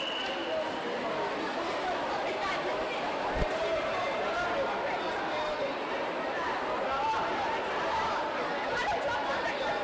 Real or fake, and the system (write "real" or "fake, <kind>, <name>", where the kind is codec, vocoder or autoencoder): real